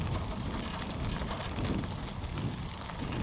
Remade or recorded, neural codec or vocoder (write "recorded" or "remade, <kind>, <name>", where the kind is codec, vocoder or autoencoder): recorded